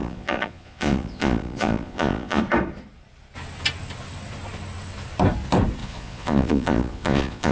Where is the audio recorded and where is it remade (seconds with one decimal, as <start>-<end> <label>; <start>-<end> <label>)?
0.0-2.4 remade; 2.4-5.8 recorded; 5.8-7.5 remade